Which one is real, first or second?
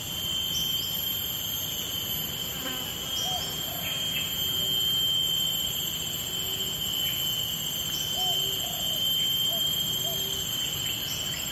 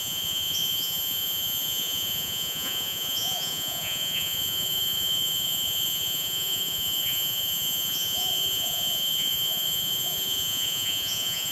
first